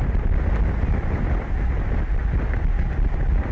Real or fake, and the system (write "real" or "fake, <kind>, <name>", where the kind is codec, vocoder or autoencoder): real